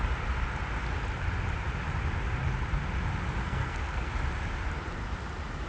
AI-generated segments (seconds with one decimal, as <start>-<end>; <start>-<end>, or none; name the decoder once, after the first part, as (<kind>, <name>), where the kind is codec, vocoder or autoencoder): 3.4-4.1 (codec, SNAC)